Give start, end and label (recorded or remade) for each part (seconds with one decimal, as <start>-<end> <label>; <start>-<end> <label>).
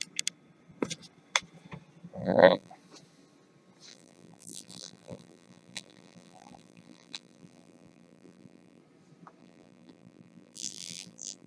0.0-2.2 recorded; 2.2-2.7 remade; 2.7-3.9 recorded; 3.9-8.8 remade; 8.8-9.4 recorded; 9.4-11.5 remade